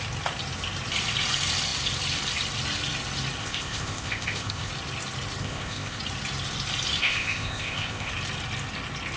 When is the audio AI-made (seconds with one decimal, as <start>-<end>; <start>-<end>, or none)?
3.4-4.7; 5.4-6.0; 7.0-8.1